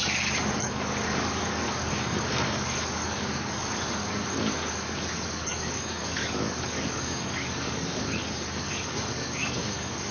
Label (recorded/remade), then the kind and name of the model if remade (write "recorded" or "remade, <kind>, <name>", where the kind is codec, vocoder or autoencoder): remade, codec, DAC